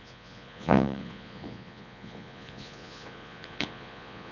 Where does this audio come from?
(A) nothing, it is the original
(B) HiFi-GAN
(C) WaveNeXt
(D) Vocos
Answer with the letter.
D